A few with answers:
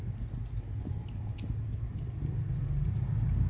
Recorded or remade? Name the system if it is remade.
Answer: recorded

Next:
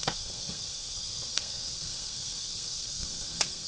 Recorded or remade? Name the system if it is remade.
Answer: remade, codec, SNAC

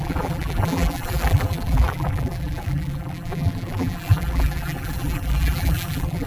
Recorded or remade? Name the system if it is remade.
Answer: remade, vocoder, BigVGAN v2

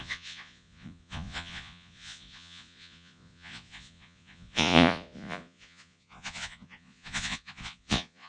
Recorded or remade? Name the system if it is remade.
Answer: remade, vocoder, Vocos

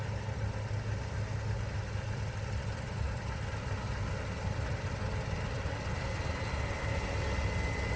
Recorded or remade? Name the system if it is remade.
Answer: recorded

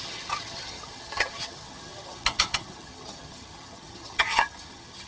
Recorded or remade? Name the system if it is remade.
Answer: remade, vocoder, HiFi-GAN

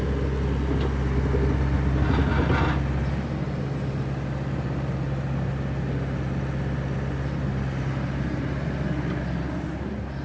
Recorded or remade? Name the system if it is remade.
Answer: recorded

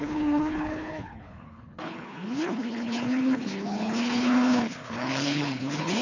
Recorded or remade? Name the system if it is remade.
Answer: remade, codec, HILCodec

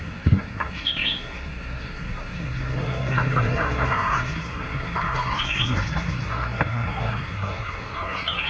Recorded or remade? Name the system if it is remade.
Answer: remade, codec, SNAC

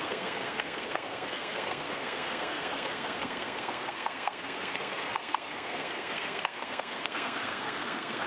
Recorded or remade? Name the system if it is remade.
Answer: remade, codec, SNAC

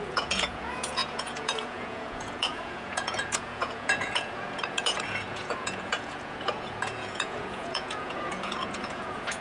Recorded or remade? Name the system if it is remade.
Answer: remade, vocoder, Vocos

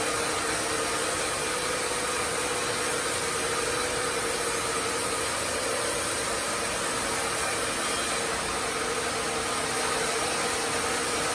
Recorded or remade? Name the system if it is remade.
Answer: recorded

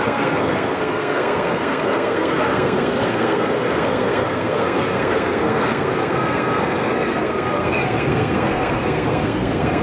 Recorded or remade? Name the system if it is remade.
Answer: remade, codec, SNAC